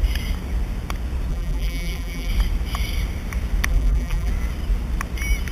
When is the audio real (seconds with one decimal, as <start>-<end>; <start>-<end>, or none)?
0.0-1.3; 2.3-3.7; 4.3-5.5